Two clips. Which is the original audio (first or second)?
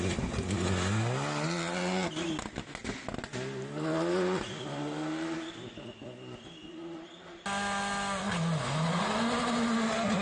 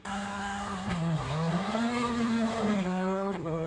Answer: first